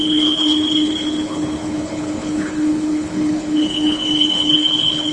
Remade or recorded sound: remade